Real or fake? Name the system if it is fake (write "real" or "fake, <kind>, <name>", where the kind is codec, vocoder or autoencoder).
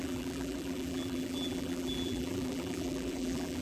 fake, vocoder, BigVGAN v2